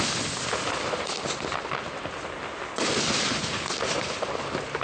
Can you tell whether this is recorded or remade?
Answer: recorded